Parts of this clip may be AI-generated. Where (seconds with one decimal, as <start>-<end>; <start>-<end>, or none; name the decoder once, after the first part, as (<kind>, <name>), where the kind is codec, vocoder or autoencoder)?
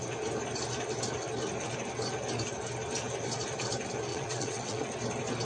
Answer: 4.1-4.9 (vocoder, WaveNeXt)